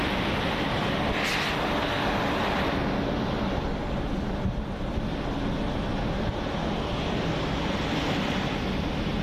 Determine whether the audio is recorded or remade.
recorded